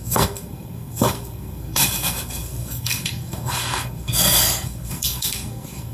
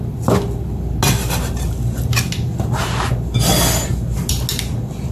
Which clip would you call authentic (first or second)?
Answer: second